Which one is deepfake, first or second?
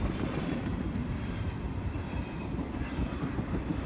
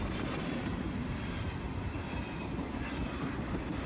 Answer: first